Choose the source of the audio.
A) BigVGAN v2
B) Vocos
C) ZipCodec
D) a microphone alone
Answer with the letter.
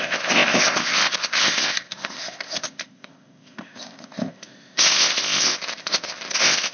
C